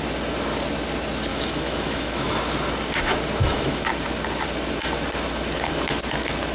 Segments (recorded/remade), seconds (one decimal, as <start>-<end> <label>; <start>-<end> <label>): 0.0-1.3 recorded; 1.3-2.3 remade; 2.3-3.4 recorded; 3.4-3.9 remade; 3.9-6.5 recorded